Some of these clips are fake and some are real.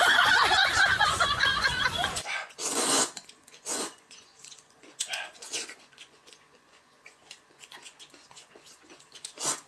fake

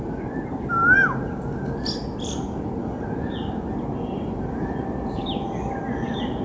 real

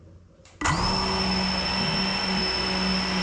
real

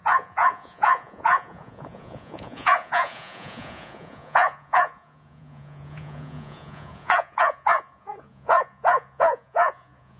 fake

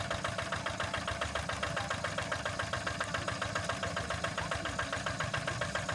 real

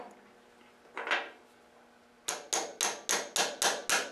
real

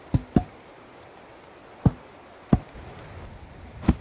real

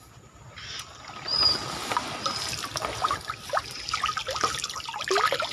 real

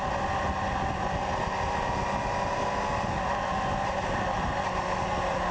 real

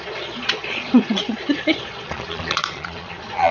fake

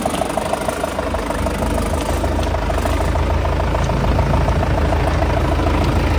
real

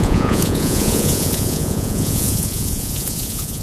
fake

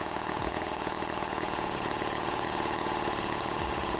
fake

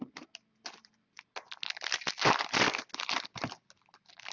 real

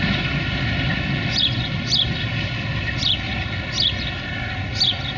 real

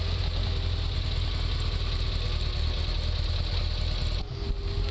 real